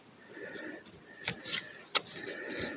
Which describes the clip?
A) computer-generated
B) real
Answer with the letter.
B